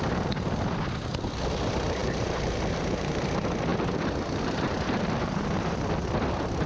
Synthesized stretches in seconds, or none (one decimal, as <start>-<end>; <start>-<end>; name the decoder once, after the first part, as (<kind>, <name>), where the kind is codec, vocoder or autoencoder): 2.0-3.3 (vocoder, BigVGAN v2)